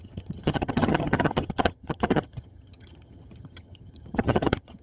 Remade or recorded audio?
remade